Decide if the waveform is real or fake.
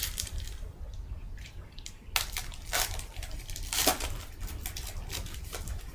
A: real